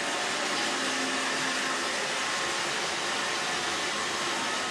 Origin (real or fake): real